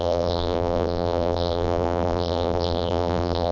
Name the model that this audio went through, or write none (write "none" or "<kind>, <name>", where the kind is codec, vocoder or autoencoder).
vocoder, BigVGAN v2